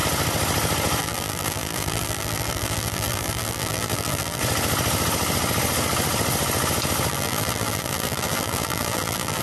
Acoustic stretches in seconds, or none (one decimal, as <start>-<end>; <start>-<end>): 0.0-1.0; 4.4-7.1